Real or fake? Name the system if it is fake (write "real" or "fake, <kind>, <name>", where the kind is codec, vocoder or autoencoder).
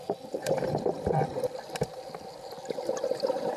real